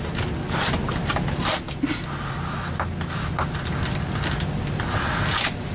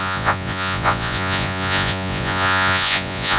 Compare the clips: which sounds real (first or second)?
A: first